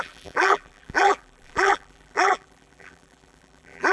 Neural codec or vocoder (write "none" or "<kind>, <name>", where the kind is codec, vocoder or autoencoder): vocoder, BigVGAN v2